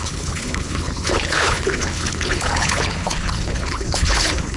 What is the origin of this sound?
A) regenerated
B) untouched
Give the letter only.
A